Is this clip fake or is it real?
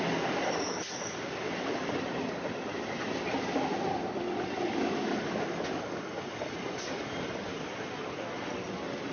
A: real